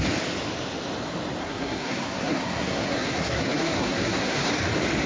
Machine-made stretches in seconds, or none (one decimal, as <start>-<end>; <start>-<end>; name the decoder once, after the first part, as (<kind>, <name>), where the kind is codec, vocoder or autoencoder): 1.4-4.5 (codec, SNAC)